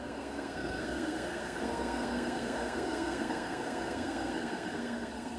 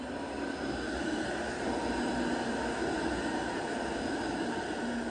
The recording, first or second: second